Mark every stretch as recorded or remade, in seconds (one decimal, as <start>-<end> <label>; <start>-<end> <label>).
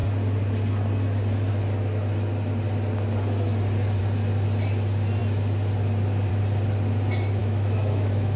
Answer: 0.0-7.4 recorded; 7.4-8.4 remade